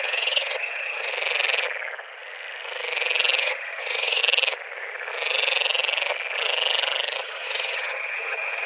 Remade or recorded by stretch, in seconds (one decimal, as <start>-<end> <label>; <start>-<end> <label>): 0.0-1.1 remade; 1.1-3.4 recorded; 3.4-4.2 remade; 4.2-7.2 recorded; 7.2-8.7 remade